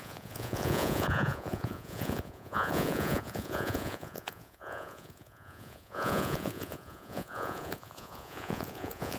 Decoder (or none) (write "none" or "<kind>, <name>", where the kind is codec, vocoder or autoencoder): vocoder, Vocos